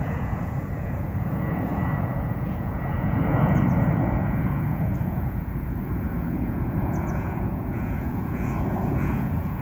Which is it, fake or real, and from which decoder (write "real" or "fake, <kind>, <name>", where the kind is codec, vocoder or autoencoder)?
fake, vocoder, Vocos